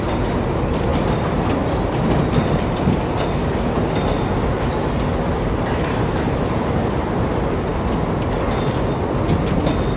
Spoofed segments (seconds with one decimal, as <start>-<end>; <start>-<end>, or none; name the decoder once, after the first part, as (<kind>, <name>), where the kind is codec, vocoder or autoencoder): none